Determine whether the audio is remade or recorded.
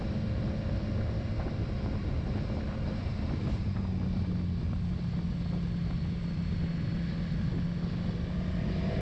recorded